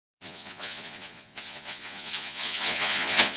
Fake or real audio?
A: fake